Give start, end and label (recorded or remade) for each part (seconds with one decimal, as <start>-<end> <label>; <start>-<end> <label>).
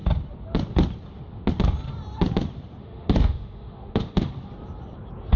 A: 0.0-2.8 recorded; 2.8-4.3 remade; 4.3-5.4 recorded